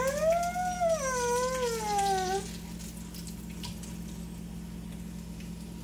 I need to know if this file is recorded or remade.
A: recorded